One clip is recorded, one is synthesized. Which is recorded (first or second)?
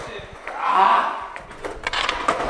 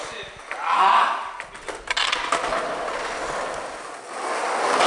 second